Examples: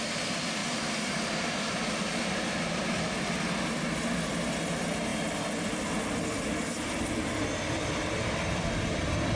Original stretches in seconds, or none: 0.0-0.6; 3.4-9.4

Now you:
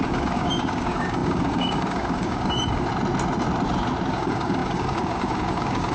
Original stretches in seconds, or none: 2.9-4.1

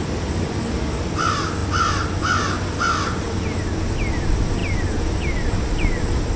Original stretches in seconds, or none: 0.0-6.4

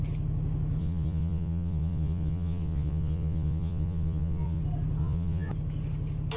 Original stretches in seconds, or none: 0.0-0.8; 4.6-5.0; 5.5-6.4

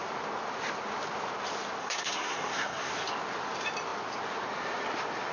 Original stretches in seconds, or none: 0.0-1.8; 2.9-5.3

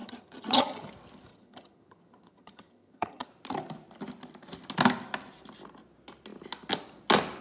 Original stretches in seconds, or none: 0.9-1.3; 3.3-7.4

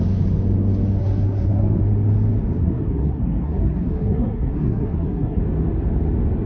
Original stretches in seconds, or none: 0.0-1.0; 1.8-2.6; 5.4-6.5

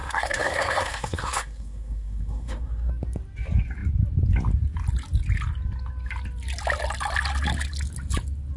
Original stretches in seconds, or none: 2.9-8.6